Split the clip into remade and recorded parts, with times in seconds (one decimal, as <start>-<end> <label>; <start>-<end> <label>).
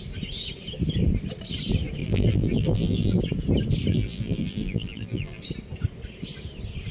0.0-2.0 recorded; 2.0-3.2 remade; 3.2-3.9 recorded; 3.9-5.4 remade; 5.4-6.9 recorded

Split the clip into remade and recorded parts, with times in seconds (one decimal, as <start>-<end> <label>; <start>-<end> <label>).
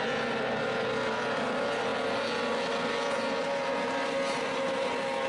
0.0-5.3 recorded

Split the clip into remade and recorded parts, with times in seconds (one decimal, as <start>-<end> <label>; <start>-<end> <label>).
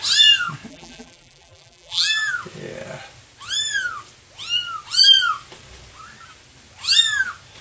0.0-0.7 recorded; 0.7-2.3 remade; 2.3-7.6 recorded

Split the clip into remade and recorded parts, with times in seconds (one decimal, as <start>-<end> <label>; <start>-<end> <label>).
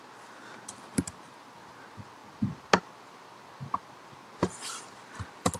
0.0-5.6 recorded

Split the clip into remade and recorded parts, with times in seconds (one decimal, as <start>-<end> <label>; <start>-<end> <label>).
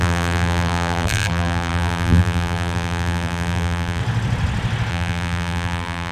0.0-4.0 remade; 4.0-4.9 recorded; 4.9-6.1 remade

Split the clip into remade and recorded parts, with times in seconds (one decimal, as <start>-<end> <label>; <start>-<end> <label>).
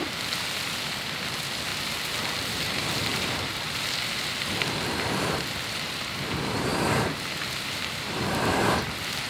0.0-1.7 remade; 1.7-2.5 recorded; 2.5-9.3 remade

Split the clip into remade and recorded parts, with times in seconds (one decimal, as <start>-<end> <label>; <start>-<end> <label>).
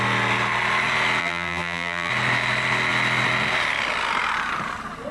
0.0-1.2 recorded; 1.2-2.1 remade; 2.1-5.1 recorded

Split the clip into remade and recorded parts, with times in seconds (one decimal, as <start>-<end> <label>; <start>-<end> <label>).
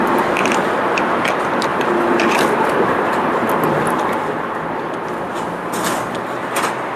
0.0-1.7 recorded; 1.7-4.3 remade; 4.3-7.0 recorded